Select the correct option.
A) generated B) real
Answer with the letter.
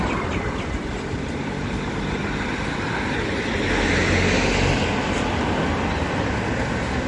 B